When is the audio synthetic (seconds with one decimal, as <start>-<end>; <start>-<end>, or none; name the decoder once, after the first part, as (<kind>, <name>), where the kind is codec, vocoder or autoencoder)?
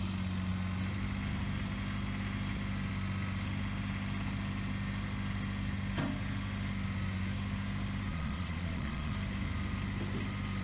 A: 8.1-9.1 (vocoder, Vocos)